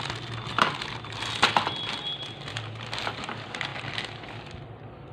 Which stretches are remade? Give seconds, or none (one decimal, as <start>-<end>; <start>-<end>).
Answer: none